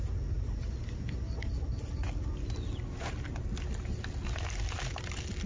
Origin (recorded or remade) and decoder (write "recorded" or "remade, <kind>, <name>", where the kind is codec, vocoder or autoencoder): recorded